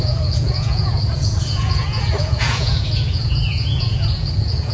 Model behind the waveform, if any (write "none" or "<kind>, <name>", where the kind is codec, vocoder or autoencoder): vocoder, Vocos